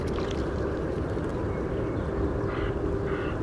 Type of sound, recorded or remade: recorded